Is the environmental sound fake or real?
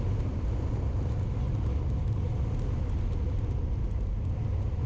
real